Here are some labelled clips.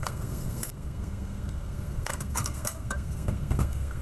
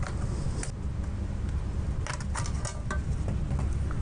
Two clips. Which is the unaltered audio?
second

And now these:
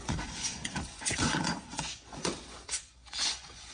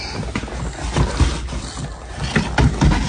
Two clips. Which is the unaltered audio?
second